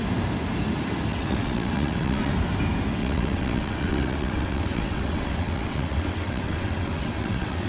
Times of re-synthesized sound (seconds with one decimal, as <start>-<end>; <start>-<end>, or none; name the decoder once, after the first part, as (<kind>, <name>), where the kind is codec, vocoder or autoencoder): 1.1-2.3 (vocoder, WaveNeXt); 3.0-7.7